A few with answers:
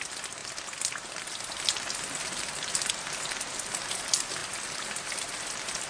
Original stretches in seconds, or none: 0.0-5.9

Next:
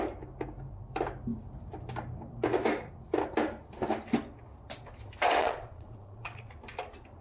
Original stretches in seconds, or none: 0.0-5.4; 6.5-7.2

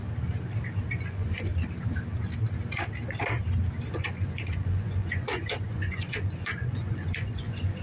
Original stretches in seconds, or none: 0.0-1.0; 1.5-3.9